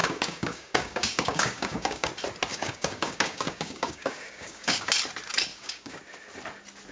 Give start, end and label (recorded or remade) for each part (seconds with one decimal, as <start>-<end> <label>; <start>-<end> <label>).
0.0-2.1 remade; 2.1-2.5 recorded; 2.5-4.9 remade; 4.9-5.5 recorded; 5.5-6.0 remade; 6.0-6.9 recorded